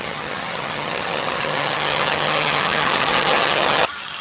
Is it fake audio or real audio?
fake